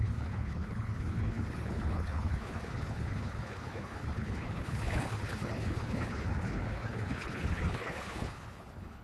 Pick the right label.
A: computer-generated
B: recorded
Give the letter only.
A